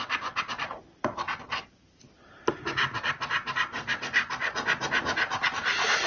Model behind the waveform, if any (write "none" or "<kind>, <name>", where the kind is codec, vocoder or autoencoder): none